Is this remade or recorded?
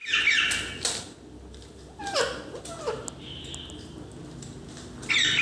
recorded